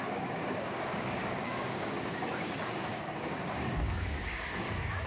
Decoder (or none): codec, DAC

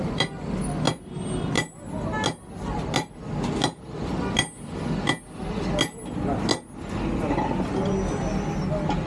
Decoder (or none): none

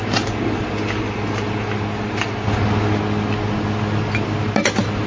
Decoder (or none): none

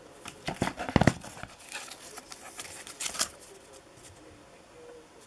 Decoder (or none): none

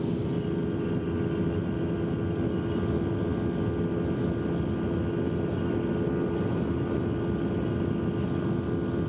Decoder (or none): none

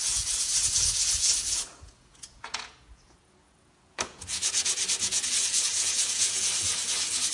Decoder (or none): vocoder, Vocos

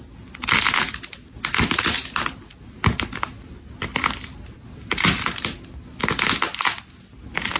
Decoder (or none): none